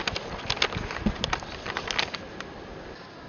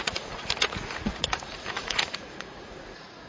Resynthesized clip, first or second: second